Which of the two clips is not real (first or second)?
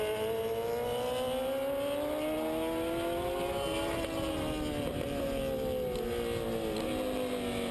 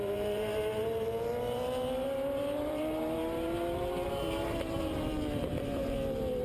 second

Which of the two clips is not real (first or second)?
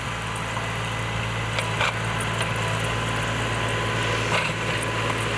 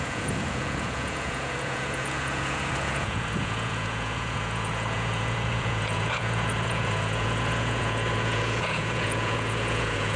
second